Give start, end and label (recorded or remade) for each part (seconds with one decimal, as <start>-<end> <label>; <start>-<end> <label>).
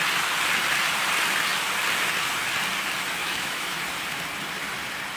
0.0-3.2 recorded; 3.2-3.8 remade; 3.8-5.2 recorded